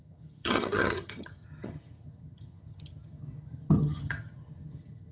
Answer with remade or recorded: remade